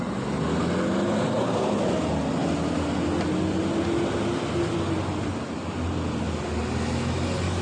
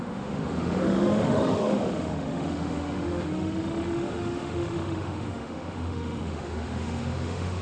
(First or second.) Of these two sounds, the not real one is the second